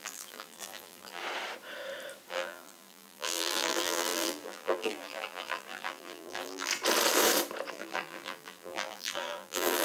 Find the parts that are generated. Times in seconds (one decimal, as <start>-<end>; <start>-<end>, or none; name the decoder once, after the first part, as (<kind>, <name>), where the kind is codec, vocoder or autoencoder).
0.0-1.2 (vocoder, BigVGAN v2); 2.3-6.7; 7.7-9.8